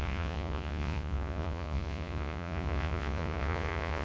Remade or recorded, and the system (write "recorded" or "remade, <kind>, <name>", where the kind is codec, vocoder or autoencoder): remade, vocoder, Vocos